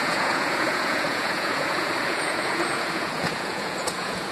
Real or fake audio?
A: fake